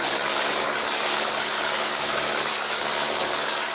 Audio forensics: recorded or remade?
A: remade